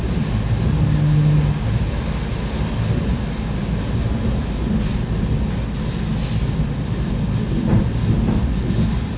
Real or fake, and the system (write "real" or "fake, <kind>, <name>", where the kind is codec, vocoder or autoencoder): real